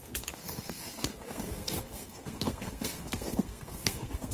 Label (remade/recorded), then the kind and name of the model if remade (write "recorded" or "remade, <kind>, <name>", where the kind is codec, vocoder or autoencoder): remade, codec, SNAC